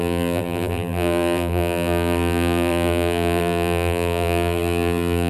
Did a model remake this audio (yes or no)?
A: yes